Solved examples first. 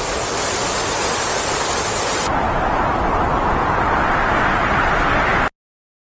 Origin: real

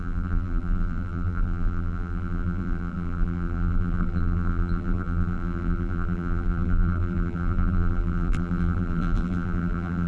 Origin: fake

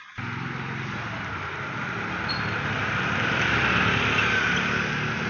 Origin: real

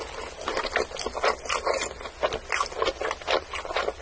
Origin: real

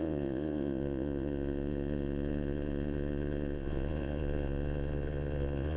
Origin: fake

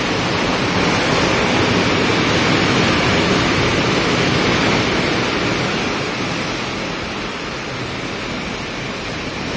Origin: real